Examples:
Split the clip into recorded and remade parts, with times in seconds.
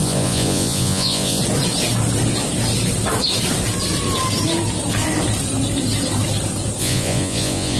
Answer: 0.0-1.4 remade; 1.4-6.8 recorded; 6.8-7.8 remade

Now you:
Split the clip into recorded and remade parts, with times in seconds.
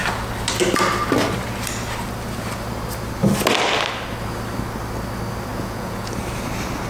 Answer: 0.0-5.5 recorded; 5.5-6.1 remade; 6.1-6.9 recorded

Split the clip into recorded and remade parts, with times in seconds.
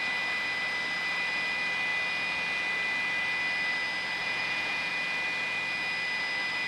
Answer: 0.0-4.2 recorded; 4.2-4.9 remade; 4.9-6.7 recorded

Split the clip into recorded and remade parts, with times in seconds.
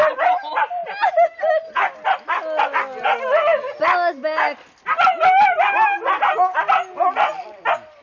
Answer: 0.0-8.0 recorded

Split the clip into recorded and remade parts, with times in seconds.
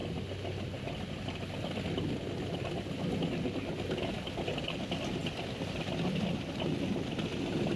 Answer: 0.0-7.8 recorded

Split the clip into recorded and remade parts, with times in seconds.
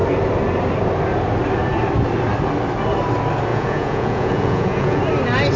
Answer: 0.0-3.5 recorded; 3.5-5.0 remade; 5.0-5.6 recorded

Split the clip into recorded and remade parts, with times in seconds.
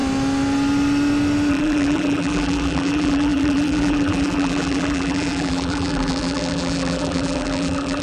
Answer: 0.0-1.5 recorded; 1.5-8.0 remade